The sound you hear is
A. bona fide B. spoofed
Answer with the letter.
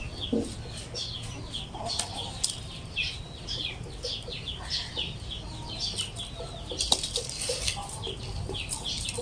A